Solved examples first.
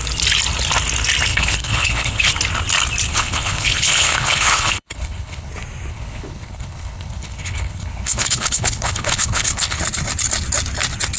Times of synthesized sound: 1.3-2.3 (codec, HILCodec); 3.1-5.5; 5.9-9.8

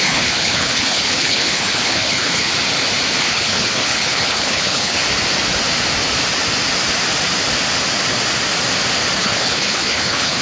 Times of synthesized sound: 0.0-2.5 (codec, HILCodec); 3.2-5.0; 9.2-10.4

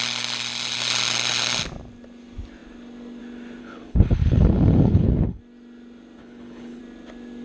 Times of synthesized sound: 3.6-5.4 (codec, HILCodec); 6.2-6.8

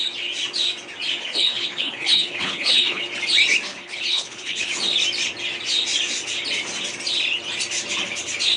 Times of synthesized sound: 1.2-3.0 (codec, HILCodec); 3.7-4.7

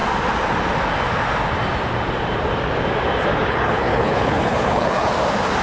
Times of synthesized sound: 3.4-5.1 (codec, HILCodec)

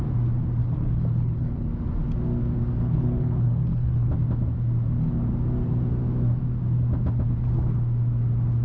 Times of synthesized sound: 0.6-1.7 (codec, HILCodec); 2.8-4.1

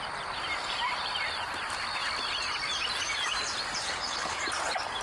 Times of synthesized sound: 3.8-4.4 (codec, HILCodec)

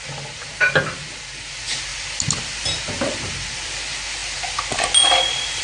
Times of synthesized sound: none